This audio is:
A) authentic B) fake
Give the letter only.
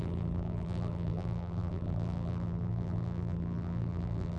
B